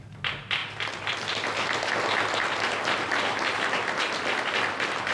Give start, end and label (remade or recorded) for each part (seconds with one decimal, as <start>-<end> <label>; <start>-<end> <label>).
0.0-5.1 recorded